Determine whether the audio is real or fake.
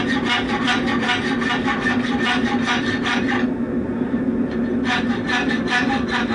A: real